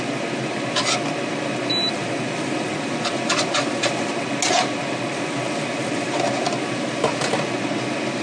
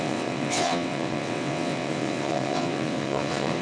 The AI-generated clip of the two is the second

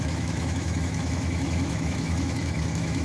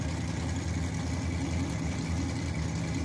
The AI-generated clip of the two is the first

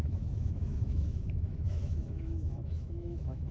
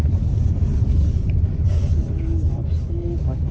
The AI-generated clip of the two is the first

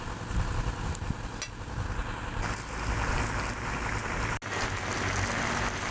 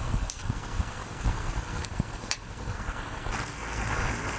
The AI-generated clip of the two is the second